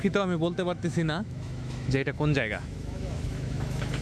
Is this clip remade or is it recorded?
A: remade